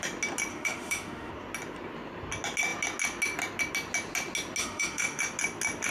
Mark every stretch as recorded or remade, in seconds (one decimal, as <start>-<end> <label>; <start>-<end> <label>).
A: 0.0-0.5 recorded; 0.5-1.3 remade; 1.3-4.6 recorded; 4.6-5.2 remade; 5.2-5.9 recorded